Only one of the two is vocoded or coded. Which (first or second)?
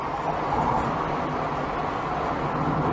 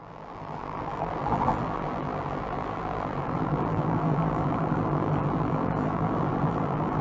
second